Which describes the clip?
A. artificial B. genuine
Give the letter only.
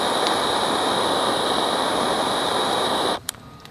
A